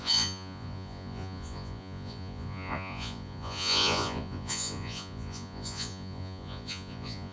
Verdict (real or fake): fake